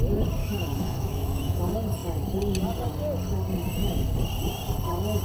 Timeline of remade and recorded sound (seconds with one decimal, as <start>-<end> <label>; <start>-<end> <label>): 0.0-0.4 recorded; 0.4-1.6 remade; 1.6-5.2 recorded